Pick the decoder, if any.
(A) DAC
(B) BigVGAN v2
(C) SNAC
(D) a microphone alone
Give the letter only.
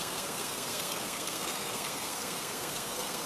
C